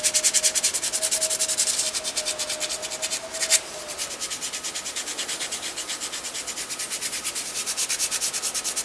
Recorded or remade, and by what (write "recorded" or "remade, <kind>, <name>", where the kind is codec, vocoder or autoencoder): recorded